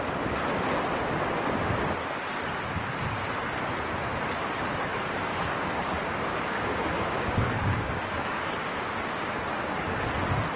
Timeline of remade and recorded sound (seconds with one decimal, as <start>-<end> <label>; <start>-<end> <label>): 0.0-5.3 recorded; 5.3-10.0 remade; 10.0-10.6 recorded